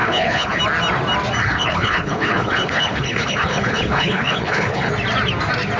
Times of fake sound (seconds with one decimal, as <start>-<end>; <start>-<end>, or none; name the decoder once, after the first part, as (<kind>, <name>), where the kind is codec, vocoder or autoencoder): 0.0-0.6 (codec, HILCodec); 1.4-4.9